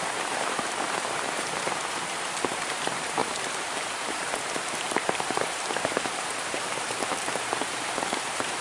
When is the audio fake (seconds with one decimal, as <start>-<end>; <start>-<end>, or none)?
0.0-8.6